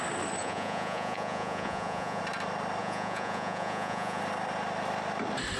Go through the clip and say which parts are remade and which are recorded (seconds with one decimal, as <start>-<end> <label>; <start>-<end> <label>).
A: 0.0-0.4 recorded; 0.4-2.2 remade; 2.2-2.8 recorded; 2.8-4.2 remade; 4.2-5.6 recorded

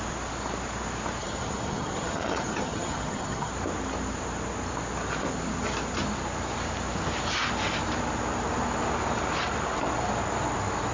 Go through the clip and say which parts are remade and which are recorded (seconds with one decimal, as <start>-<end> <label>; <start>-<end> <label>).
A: 0.0-1.2 recorded; 1.2-3.5 remade; 3.5-10.9 recorded

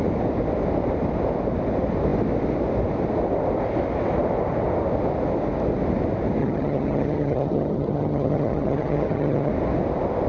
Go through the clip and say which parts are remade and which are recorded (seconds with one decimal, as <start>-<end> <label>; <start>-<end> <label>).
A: 0.0-6.4 recorded; 6.4-9.5 remade; 9.5-10.3 recorded

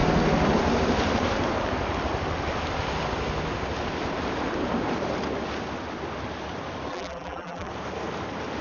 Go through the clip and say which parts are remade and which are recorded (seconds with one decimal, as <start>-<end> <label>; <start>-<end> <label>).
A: 0.0-6.9 recorded; 6.9-7.7 remade; 7.7-8.6 recorded

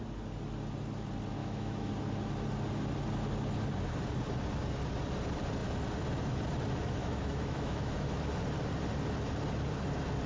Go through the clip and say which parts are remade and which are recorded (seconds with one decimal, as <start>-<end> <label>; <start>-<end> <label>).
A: 0.0-1.4 recorded; 1.4-1.9 remade; 1.9-7.0 recorded; 7.0-8.2 remade; 8.2-10.3 recorded